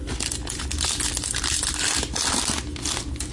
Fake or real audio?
real